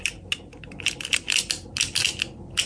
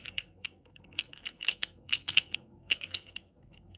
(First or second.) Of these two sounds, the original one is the first